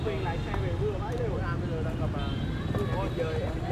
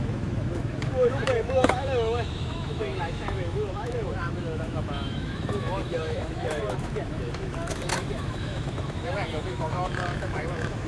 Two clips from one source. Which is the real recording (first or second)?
first